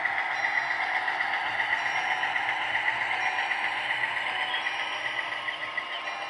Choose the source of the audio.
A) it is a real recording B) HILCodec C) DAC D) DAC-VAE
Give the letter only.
A